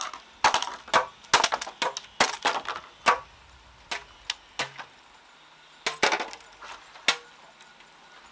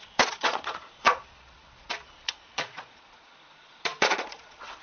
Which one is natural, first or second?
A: first